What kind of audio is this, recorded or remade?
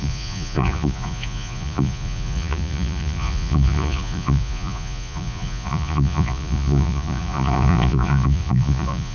remade